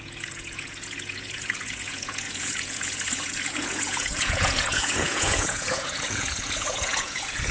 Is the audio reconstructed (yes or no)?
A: yes